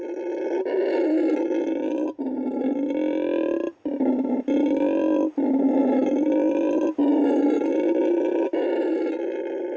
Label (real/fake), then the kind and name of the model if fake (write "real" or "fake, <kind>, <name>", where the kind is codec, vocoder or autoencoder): real